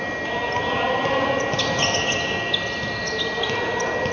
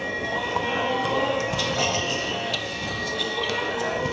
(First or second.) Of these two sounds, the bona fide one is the first